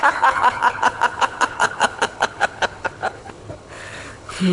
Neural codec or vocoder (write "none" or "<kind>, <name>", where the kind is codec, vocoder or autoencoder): codec, HILCodec